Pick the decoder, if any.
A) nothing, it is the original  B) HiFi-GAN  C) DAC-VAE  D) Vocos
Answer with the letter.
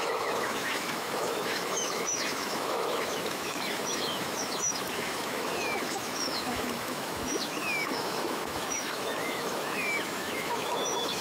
C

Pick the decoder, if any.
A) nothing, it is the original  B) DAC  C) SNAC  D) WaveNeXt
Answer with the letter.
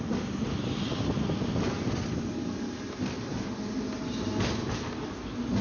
A